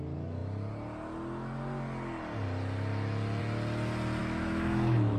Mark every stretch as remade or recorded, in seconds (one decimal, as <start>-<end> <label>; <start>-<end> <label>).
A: 0.0-4.2 recorded; 4.2-5.2 remade